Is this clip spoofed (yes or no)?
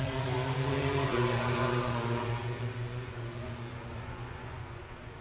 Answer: yes